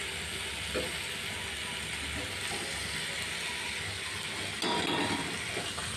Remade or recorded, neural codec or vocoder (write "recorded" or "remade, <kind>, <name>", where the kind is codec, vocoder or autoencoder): recorded